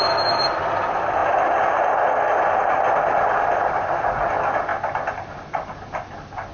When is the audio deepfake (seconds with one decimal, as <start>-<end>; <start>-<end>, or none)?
none